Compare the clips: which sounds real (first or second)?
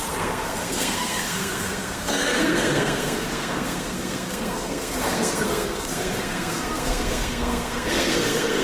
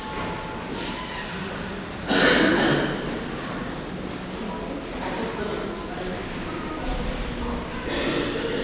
second